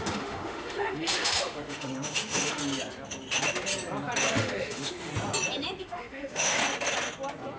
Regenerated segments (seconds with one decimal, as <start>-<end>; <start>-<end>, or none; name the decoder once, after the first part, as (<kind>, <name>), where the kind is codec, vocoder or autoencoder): 0.0-2.6 (autoencoder, DAC-VAE); 4.3-5.1; 5.8-6.6

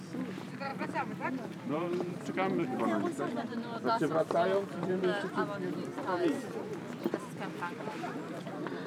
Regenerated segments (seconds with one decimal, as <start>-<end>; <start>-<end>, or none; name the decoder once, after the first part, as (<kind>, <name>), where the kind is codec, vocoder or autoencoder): 0.7-2.3 (vocoder, BigVGAN v2); 3.5-4.1

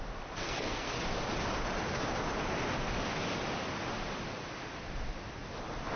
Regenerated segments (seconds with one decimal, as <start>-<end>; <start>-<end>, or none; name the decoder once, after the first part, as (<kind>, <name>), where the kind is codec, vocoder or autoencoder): 0.4-1.0 (codec, SNAC)